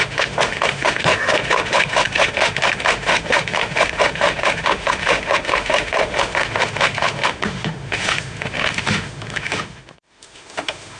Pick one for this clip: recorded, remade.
remade